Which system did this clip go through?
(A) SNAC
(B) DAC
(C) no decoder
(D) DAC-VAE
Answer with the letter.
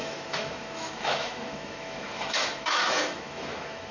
D